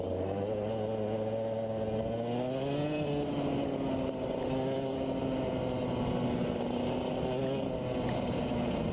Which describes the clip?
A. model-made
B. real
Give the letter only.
B